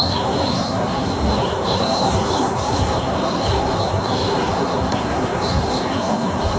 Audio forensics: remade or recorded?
remade